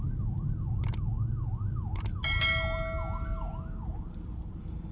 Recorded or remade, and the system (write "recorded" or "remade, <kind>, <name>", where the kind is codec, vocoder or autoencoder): recorded